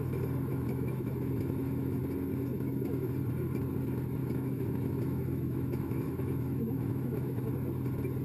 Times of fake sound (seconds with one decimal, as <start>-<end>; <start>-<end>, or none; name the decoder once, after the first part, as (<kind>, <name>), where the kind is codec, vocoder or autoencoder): 0.5-2.0 (autoencoder, DAC-VAE); 2.5-3.1; 4.2-7.5